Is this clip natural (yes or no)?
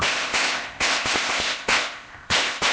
no